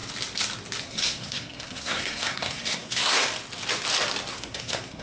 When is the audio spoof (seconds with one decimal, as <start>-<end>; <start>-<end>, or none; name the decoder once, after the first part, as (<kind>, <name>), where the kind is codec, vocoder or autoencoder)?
0.8-3.2 (codec, SNAC); 4.3-5.0